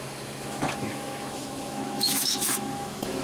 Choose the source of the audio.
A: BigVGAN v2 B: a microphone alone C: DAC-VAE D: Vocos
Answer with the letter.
C